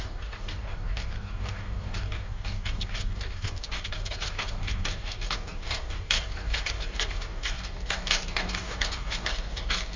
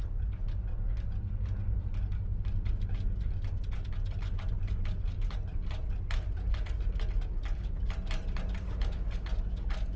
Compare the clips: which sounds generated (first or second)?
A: first